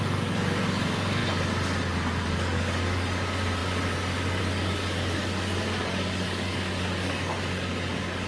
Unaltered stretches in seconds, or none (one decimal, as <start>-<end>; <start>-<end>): 1.2-2.2